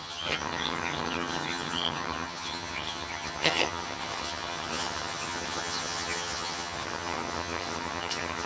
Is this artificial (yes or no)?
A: yes